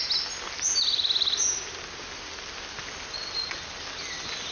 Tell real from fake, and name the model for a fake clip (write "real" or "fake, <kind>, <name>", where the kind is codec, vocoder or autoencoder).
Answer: real